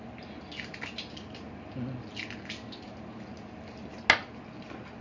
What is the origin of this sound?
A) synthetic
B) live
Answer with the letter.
B